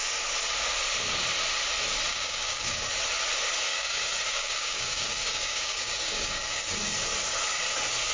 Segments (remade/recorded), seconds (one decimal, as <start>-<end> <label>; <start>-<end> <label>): 0.0-2.1 recorded; 2.1-2.9 remade; 2.9-3.7 recorded; 3.7-6.8 remade; 6.8-8.1 recorded